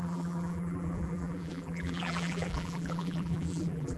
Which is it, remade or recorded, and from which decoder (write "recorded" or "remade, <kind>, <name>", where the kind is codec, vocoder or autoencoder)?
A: remade, vocoder, BigVGAN v2